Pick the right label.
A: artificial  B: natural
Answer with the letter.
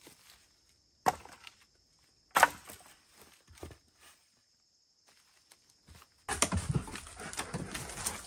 B